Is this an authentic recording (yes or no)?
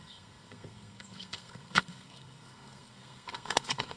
no